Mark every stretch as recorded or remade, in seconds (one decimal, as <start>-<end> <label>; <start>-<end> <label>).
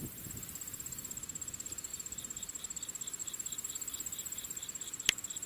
0.0-1.9 recorded; 1.9-2.6 remade; 2.6-4.2 recorded; 4.2-5.5 remade